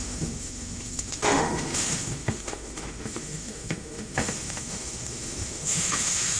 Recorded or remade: remade